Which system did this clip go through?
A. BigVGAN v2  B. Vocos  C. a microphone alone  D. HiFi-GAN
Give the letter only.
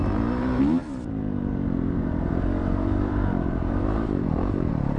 A